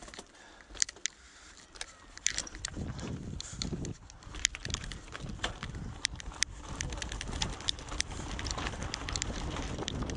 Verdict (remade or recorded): remade